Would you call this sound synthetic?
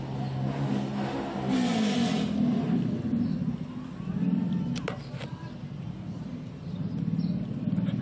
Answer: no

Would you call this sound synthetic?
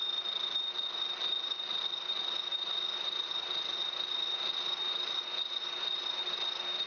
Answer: no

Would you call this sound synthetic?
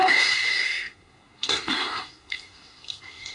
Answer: yes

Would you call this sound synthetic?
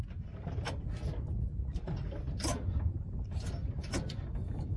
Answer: no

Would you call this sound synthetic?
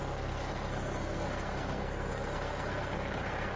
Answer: yes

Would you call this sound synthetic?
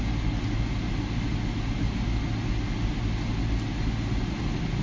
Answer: no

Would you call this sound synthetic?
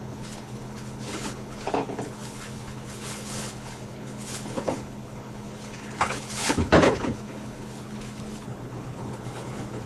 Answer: yes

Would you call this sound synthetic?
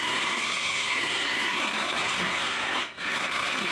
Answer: yes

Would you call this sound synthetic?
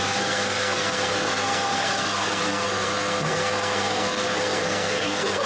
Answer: yes